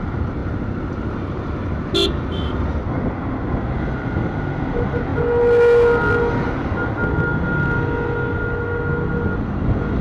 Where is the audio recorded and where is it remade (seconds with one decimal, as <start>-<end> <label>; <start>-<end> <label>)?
0.0-10.0 recorded